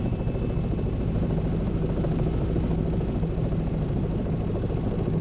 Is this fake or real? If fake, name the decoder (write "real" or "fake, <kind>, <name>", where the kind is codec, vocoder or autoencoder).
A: real